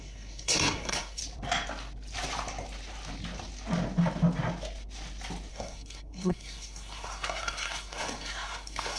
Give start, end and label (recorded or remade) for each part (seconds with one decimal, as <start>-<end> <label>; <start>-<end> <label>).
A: 0.0-1.2 remade; 1.2-5.5 recorded; 5.5-9.0 remade